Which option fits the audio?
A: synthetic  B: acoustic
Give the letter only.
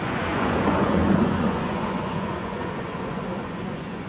A